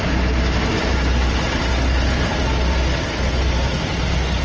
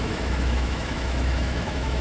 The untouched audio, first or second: first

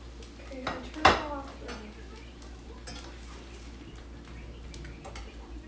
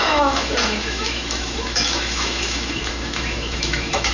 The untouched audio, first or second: first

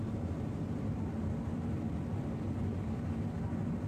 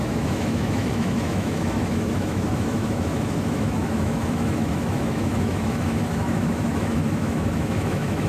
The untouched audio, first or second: first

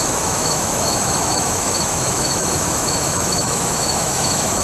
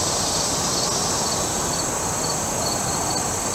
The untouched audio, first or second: second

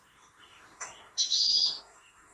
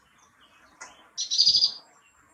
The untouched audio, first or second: second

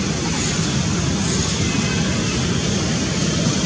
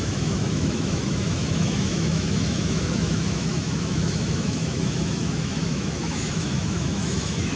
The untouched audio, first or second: first